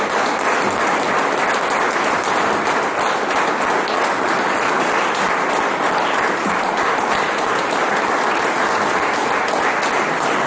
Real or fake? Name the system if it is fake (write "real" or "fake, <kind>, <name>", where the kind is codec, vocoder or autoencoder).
real